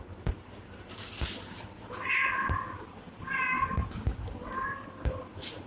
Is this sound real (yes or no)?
yes